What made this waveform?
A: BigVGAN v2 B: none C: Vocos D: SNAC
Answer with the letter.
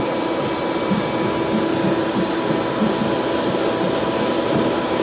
B